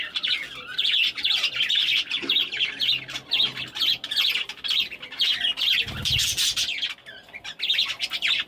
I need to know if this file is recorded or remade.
recorded